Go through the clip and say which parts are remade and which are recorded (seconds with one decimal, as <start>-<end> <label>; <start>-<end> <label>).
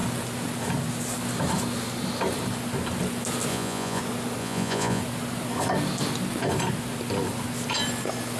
0.0-3.5 recorded; 3.5-4.0 remade; 4.0-4.4 recorded; 4.4-5.0 remade; 5.0-8.4 recorded